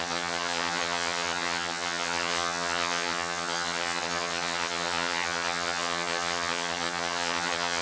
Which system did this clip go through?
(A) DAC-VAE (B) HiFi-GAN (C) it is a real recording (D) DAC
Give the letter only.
B